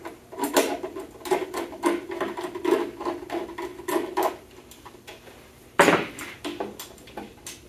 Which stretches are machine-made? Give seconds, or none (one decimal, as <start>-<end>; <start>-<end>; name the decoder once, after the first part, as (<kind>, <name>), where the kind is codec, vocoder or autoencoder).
none